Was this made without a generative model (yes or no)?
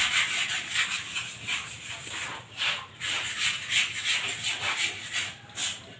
yes